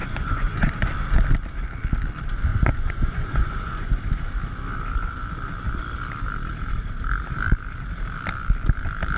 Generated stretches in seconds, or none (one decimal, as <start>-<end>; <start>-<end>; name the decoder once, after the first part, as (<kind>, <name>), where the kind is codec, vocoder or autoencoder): 0.0-0.7 (vocoder, Vocos); 2.5-3.9